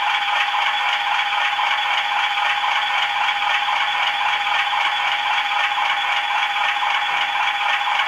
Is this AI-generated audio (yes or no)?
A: yes